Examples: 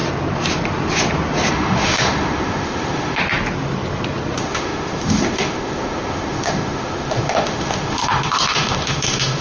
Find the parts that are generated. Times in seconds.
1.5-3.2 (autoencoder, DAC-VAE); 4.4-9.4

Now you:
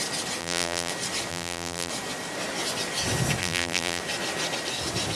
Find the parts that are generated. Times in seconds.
0.4-0.9 (vocoder, BigVGAN v2); 1.3-1.9; 3.4-4.0

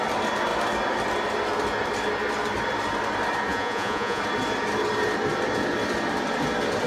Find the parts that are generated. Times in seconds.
3.5-4.2 (vocoder, Vocos)

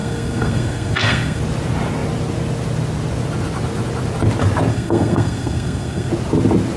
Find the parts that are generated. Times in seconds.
0.0-1.4 (codec, SNAC); 4.7-6.1